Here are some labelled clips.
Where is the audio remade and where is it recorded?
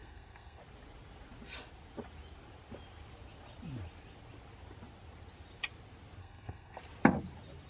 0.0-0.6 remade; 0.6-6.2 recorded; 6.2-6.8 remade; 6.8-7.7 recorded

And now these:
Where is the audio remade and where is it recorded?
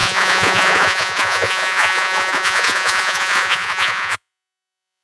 0.0-5.0 remade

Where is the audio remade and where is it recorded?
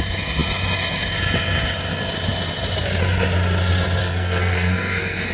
0.0-4.0 recorded; 4.0-5.3 remade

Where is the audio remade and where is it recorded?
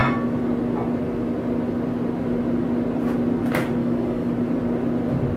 0.0-3.8 recorded; 3.8-4.3 remade; 4.3-5.4 recorded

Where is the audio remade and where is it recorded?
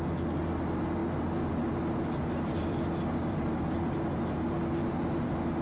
0.0-1.0 recorded; 1.0-4.1 remade; 4.1-5.6 recorded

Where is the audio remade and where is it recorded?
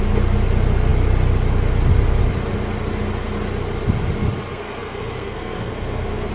0.0-4.5 recorded; 4.5-6.3 remade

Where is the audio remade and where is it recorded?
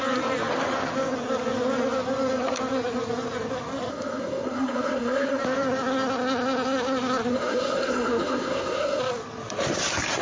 0.0-3.9 recorded; 3.9-5.4 remade; 5.4-7.3 recorded; 7.3-9.0 remade; 9.0-10.2 recorded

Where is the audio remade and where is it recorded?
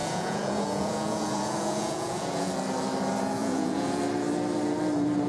0.0-2.5 remade; 2.5-3.4 recorded; 3.4-4.0 remade; 4.0-5.3 recorded